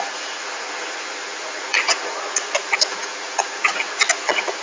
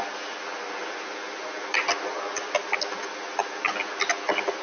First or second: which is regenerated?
first